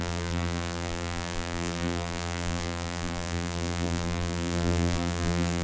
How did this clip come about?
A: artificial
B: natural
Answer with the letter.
A